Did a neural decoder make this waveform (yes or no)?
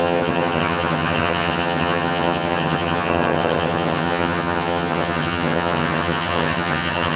yes